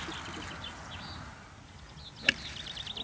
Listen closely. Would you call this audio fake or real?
real